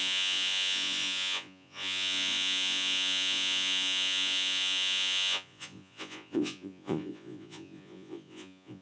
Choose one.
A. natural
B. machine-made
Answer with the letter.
B